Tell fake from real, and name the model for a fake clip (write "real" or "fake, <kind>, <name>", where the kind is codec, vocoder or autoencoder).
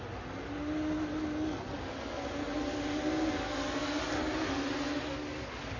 real